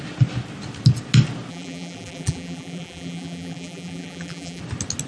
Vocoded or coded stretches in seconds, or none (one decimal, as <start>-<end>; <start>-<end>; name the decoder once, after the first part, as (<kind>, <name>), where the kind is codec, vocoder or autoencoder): 1.5-4.6 (vocoder, BigVGAN v2)